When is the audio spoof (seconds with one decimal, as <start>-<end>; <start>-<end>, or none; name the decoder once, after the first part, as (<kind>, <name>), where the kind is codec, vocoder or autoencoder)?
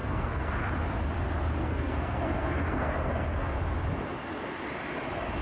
0.0-0.5 (codec, SNAC); 1.6-3.6